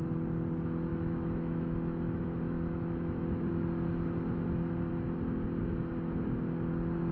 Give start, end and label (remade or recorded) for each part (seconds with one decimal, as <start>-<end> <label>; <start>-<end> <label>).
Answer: 0.0-0.9 recorded; 0.9-3.5 remade; 3.5-7.1 recorded